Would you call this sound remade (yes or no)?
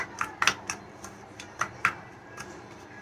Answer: no